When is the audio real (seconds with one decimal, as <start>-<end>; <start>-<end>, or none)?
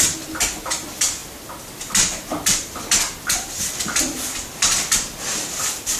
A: 0.0-6.0